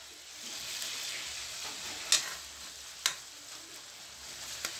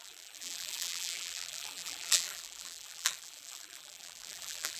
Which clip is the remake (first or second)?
second